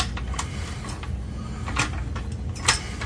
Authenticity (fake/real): real